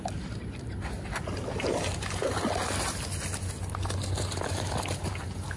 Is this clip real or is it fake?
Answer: real